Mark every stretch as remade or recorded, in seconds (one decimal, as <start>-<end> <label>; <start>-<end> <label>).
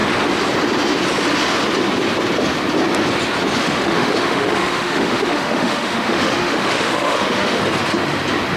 0.0-3.6 recorded; 3.6-7.6 remade; 7.6-8.6 recorded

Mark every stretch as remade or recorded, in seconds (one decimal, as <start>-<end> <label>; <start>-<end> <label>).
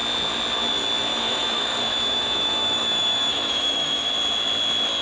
0.0-1.1 recorded; 1.1-4.1 remade; 4.1-5.0 recorded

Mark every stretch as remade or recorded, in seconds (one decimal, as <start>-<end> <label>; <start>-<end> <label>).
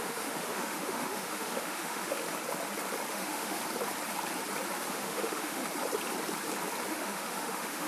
0.0-2.2 remade; 2.2-3.1 recorded; 3.1-3.6 remade; 3.6-4.9 recorded; 4.9-5.6 remade; 5.6-6.9 recorded; 6.9-7.9 remade